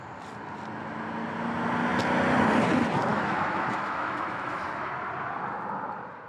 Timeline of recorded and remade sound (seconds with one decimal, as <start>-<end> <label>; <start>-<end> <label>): 0.0-3.1 recorded; 3.1-4.9 remade; 4.9-6.3 recorded